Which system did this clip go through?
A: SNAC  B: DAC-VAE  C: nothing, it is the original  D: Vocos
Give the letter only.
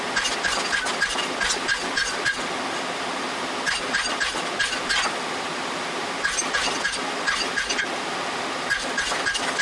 C